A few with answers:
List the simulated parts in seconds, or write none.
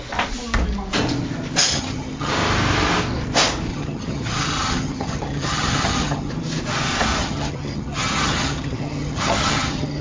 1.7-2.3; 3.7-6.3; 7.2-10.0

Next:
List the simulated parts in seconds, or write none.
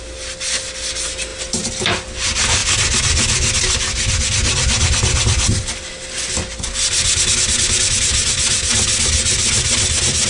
6.5-7.3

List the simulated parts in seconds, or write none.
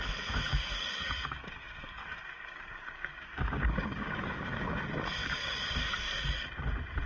0.5-4.8; 5.2-6.3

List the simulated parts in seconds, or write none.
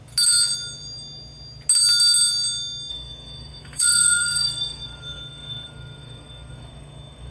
2.9-7.3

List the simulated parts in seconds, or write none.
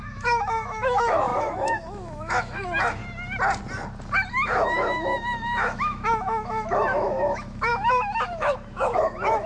0.0-3.0; 4.3-9.5